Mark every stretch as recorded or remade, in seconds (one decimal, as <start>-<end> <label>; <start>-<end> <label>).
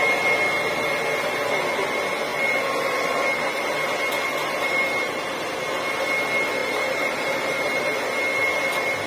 0.0-6.6 recorded; 6.6-7.8 remade; 7.8-9.1 recorded